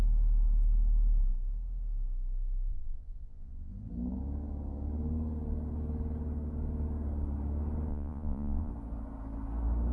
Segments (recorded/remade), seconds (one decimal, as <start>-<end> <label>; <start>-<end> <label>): 0.0-2.7 recorded; 2.7-3.7 remade; 3.7-7.9 recorded; 7.9-8.7 remade; 8.7-9.9 recorded